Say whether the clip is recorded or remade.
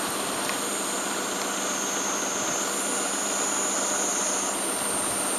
recorded